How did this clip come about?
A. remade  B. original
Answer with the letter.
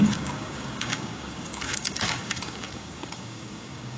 A